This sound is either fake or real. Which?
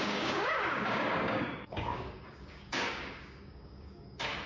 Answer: fake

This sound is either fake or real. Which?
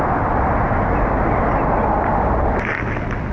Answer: real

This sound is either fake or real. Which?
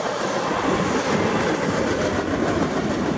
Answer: real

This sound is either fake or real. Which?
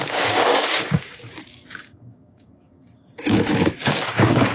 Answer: fake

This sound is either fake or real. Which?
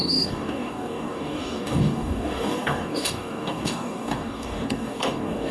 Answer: fake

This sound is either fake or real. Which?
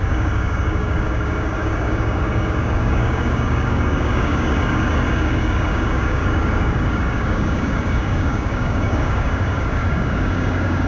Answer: fake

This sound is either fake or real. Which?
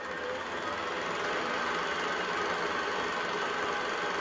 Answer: real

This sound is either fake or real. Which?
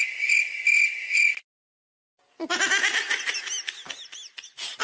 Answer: real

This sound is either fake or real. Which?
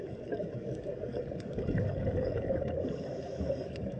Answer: fake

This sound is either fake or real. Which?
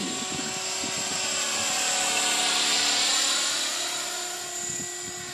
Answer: real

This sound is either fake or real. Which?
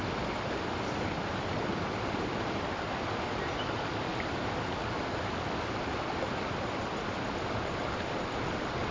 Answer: real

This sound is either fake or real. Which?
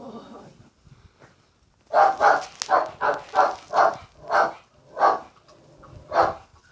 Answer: real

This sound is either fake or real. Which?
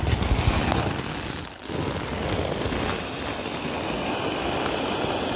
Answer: real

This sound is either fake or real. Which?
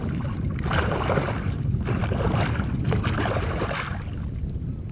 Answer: real